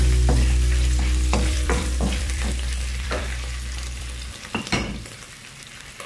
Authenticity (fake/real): fake